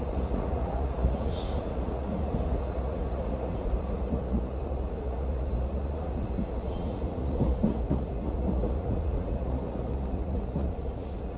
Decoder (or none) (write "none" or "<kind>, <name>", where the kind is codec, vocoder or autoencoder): vocoder, Vocos